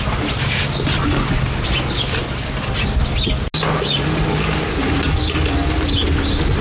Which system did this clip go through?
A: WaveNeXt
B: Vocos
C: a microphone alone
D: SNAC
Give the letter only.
C